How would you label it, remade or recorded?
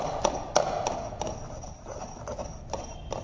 recorded